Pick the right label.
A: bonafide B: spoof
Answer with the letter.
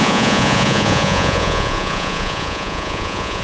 B